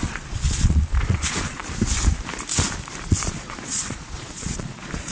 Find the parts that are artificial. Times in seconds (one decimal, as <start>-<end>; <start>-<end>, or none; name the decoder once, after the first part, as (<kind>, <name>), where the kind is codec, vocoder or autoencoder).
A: 0.0-1.6 (vocoder, Vocos); 3.0-5.1